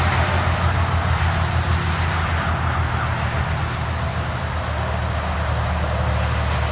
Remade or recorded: recorded